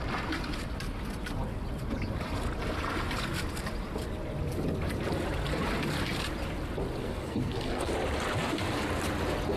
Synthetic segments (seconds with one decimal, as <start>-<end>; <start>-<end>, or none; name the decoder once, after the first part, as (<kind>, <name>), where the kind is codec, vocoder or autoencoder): 7.0-7.9 (codec, SNAC)